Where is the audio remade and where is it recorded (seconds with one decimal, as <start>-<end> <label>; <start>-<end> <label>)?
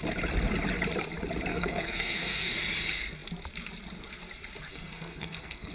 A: 0.0-1.5 recorded; 1.5-2.5 remade; 2.5-4.7 recorded; 4.7-5.7 remade